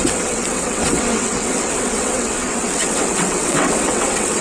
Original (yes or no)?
no